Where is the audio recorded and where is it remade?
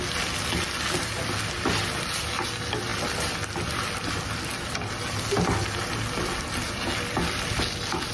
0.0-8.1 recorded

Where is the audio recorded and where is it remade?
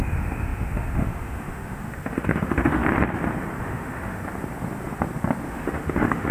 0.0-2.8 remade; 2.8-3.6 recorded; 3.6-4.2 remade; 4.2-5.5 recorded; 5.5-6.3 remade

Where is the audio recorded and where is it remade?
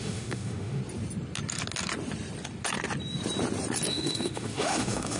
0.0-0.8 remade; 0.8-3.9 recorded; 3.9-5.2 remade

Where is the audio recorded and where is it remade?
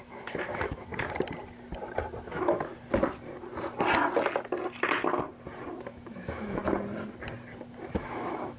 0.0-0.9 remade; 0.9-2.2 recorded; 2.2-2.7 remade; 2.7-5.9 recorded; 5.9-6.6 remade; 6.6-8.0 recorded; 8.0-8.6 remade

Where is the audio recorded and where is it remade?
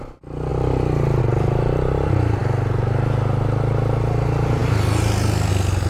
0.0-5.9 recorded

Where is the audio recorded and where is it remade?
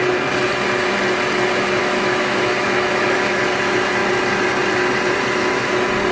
0.0-1.8 recorded; 1.8-3.4 remade; 3.4-6.1 recorded